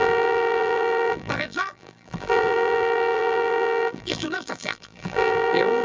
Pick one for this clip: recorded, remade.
remade